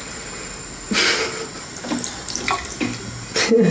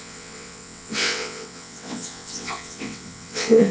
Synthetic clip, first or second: second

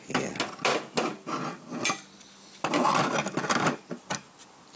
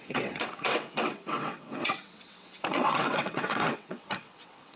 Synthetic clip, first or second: second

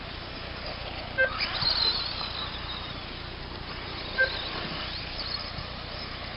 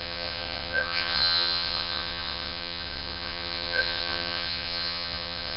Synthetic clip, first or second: second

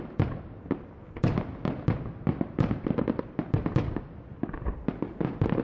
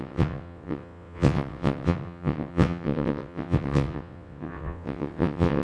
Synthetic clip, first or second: second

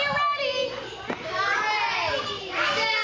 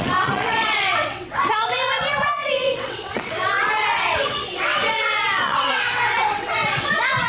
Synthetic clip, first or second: second